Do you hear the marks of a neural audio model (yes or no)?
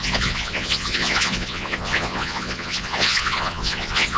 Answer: yes